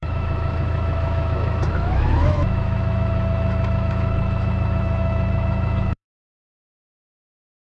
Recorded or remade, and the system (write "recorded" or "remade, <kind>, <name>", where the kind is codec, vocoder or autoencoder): remade, autoencoder, DAC-VAE